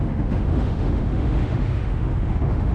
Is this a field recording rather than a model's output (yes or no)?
no